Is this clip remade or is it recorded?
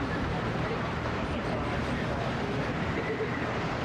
remade